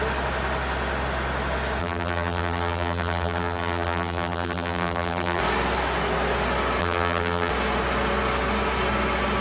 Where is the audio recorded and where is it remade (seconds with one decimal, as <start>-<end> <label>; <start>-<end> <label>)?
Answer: 0.0-1.8 recorded; 1.8-5.4 remade; 5.4-6.8 recorded; 6.8-7.5 remade; 7.5-9.4 recorded